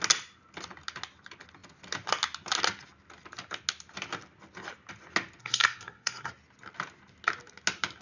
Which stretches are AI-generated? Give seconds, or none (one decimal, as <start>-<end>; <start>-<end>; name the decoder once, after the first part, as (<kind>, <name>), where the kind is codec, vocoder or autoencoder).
5.4-6.3 (codec, SNAC)